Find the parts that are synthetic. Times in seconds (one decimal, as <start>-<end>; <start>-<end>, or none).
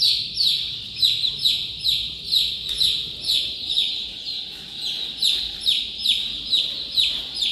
0.0-4.0; 5.4-7.5